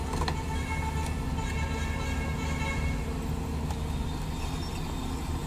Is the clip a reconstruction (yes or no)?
no